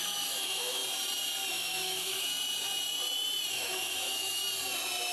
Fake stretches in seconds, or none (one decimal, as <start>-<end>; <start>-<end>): 0.0-0.8; 1.5-2.3; 3.5-4.4